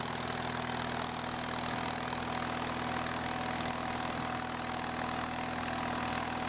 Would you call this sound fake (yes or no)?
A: no